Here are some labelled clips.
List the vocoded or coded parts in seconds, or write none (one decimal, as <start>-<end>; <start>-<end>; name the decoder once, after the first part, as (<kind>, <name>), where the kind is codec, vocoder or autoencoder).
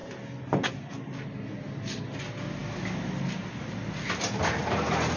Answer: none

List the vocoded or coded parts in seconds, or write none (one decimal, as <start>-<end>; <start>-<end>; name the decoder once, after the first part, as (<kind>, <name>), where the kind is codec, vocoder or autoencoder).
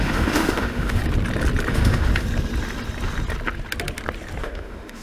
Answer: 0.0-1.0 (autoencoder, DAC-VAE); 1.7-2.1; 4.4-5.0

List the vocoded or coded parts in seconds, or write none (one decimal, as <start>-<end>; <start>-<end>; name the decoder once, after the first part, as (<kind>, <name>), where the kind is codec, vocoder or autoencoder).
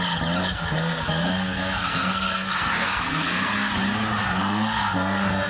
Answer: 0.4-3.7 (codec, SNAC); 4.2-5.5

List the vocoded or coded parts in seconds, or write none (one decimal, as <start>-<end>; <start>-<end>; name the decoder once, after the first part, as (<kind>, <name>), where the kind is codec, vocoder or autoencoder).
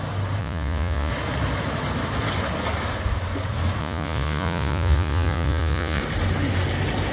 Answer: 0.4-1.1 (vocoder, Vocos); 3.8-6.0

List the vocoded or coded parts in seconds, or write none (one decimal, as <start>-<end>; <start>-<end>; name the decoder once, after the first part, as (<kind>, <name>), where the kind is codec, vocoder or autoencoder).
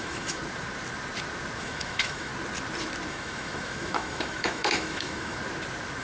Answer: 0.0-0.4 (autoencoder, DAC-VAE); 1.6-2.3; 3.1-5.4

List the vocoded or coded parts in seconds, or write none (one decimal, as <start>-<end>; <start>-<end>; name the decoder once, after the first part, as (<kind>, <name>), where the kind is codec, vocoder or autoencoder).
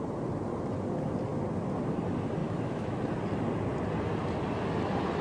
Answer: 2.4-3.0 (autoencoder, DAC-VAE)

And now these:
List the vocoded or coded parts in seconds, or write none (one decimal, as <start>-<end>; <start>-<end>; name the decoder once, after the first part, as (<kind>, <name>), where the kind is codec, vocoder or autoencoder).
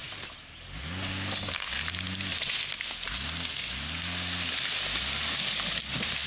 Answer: none